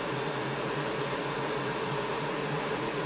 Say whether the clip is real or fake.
fake